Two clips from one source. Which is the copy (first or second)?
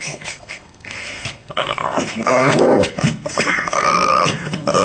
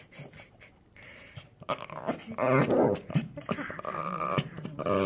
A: first